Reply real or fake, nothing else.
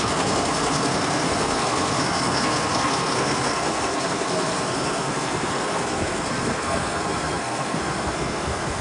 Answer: fake